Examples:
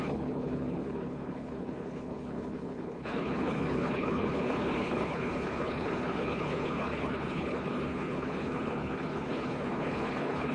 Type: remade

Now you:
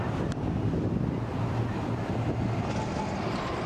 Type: recorded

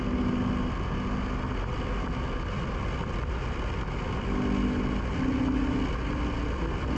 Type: recorded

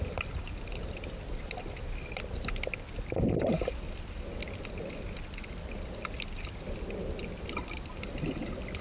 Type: recorded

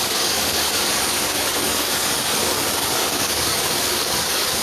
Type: remade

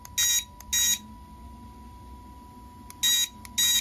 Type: recorded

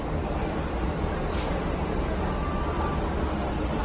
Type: recorded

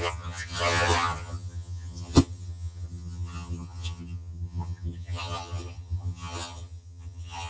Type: remade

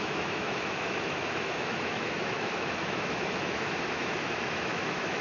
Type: remade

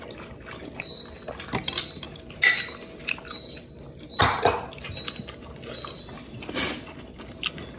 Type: recorded